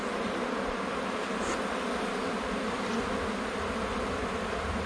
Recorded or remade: recorded